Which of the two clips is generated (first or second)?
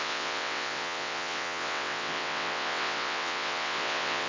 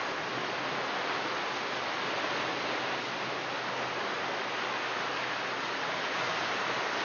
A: first